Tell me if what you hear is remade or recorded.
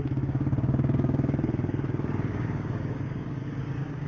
remade